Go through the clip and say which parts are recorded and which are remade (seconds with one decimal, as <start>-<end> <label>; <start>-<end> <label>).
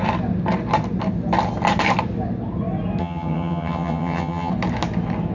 0.0-3.0 recorded; 3.0-4.5 remade; 4.5-5.3 recorded